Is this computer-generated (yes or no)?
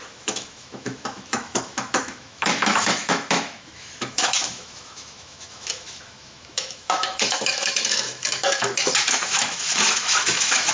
yes